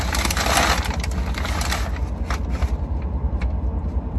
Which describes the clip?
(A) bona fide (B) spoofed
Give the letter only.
A